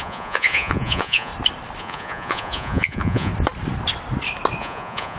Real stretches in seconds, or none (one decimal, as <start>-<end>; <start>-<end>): 1.3-1.8; 3.3-4.6